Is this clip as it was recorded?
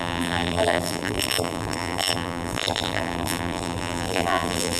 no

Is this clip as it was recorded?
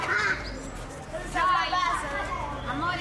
yes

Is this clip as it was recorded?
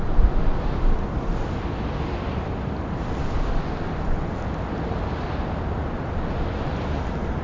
yes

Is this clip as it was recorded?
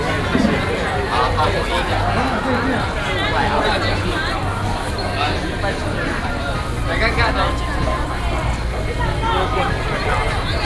yes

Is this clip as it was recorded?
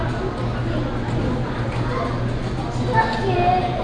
yes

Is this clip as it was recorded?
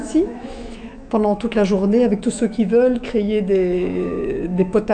no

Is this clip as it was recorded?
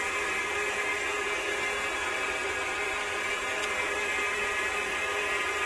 yes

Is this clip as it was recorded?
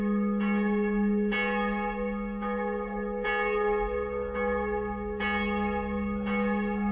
yes